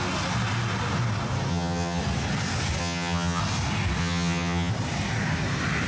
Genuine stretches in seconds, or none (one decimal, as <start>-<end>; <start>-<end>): 0.0-1.5; 2.0-2.8; 3.4-4.0; 4.7-5.9